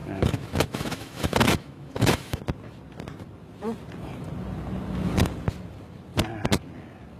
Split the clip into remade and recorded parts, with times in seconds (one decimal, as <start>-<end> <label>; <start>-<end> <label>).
0.0-2.4 remade; 2.4-7.2 recorded